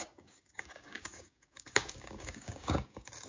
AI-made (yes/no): yes